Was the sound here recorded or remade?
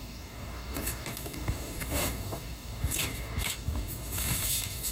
remade